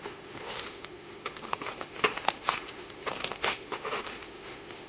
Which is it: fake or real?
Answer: fake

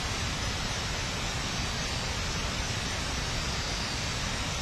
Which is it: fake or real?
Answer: real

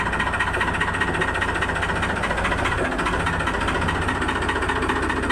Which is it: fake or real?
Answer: real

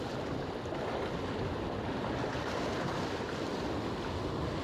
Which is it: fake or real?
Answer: real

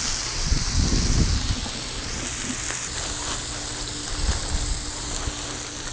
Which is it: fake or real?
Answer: real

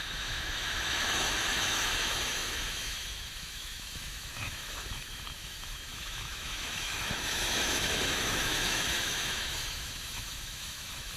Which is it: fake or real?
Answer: fake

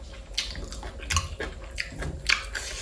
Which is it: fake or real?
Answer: real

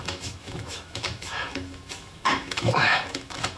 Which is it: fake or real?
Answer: fake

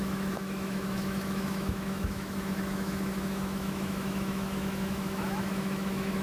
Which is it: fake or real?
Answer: fake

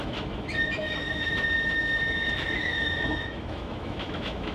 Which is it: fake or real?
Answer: fake